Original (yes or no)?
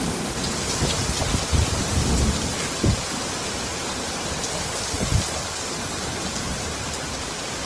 yes